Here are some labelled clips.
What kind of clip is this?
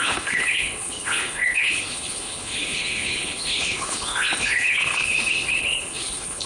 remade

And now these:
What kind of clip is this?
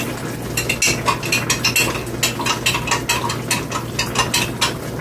recorded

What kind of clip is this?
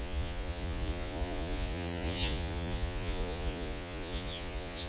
remade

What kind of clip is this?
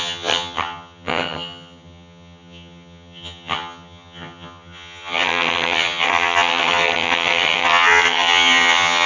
remade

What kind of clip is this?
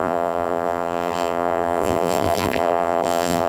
remade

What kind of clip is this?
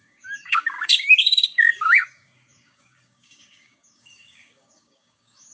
remade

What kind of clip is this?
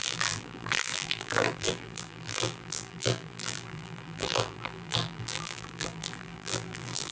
remade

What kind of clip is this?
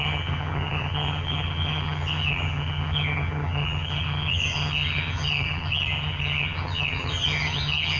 remade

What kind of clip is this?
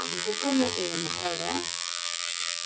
remade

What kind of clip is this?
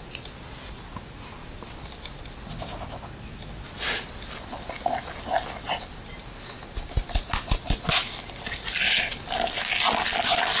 recorded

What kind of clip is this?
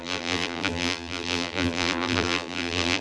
remade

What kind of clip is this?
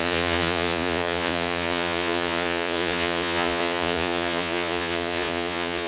remade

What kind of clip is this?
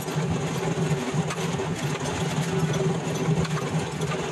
recorded